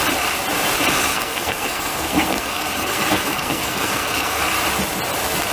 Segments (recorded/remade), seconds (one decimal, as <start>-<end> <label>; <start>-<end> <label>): 0.0-1.1 recorded; 1.1-4.4 remade; 4.4-5.5 recorded